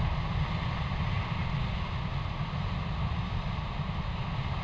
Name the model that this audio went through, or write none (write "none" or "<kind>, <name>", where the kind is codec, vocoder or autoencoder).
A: none